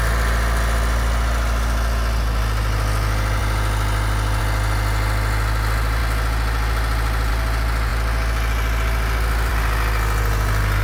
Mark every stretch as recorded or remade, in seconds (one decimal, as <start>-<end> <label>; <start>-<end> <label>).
0.0-10.8 recorded